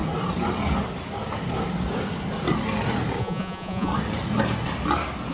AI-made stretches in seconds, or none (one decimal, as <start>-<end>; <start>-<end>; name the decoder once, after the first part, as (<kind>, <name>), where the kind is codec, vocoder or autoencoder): 3.2-3.9 (vocoder, Vocos)